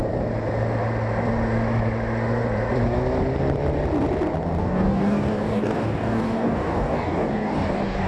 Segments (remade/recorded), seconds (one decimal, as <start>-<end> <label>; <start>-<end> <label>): 0.0-4.6 recorded; 4.6-8.1 remade